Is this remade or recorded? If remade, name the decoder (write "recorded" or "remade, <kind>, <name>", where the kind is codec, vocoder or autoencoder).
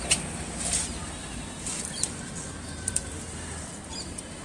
recorded